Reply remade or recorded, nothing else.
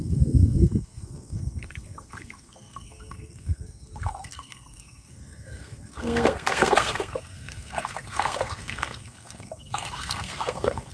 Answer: remade